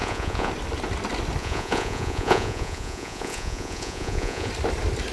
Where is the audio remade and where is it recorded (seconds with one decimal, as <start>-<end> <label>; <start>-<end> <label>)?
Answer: 0.0-0.5 remade; 0.5-1.4 recorded; 1.4-4.5 remade; 4.5-5.1 recorded